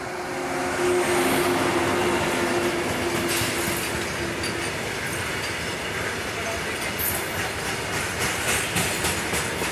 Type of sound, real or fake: real